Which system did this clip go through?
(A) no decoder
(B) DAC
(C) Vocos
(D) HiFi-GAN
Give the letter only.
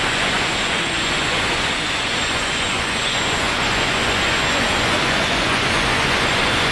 C